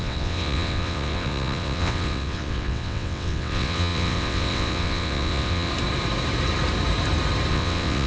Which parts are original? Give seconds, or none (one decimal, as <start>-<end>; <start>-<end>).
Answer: 5.7-7.5